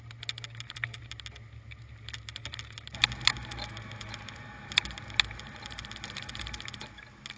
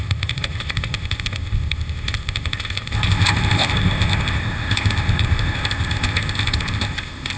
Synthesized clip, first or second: second